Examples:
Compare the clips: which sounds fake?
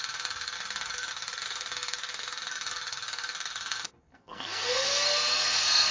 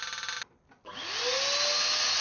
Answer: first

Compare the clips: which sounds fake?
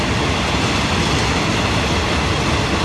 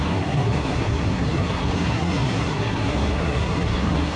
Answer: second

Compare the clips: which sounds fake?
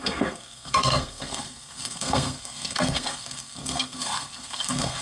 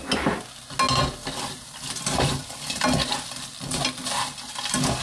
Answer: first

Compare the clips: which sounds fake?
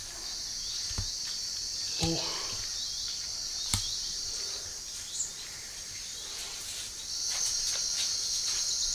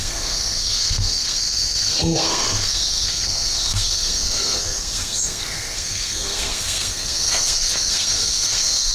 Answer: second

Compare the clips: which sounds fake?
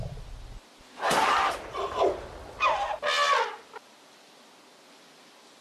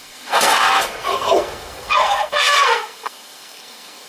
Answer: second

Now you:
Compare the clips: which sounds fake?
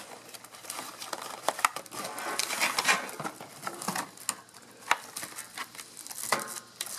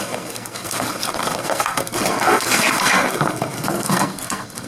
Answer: second